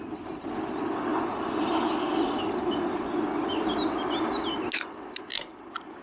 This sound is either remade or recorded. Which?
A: recorded